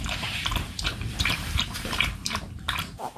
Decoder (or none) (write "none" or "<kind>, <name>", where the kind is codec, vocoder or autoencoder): vocoder, BigVGAN v2